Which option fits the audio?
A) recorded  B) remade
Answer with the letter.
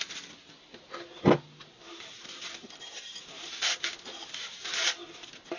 A